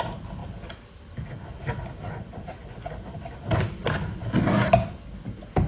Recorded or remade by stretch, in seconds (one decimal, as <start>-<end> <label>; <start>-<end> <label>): 0.0-5.7 recorded